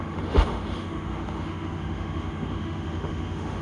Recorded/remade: remade